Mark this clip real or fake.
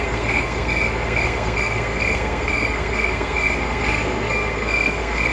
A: fake